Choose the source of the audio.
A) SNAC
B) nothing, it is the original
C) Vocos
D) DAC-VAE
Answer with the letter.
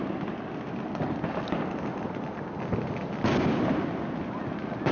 B